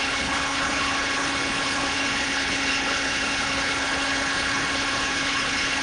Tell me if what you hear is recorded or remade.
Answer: remade